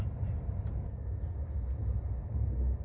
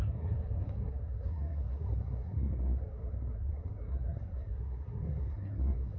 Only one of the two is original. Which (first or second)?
first